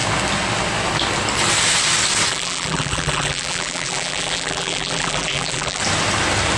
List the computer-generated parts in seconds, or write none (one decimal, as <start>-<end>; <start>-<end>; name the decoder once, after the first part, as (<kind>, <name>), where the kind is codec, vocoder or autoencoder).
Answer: 2.3-5.8 (vocoder, BigVGAN v2)